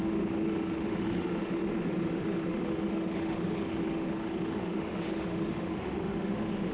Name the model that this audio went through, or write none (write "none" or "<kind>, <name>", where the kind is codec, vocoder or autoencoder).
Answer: autoencoder, DAC-VAE